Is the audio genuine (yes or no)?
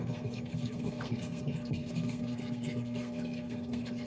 no